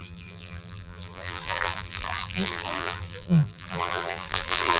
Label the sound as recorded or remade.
remade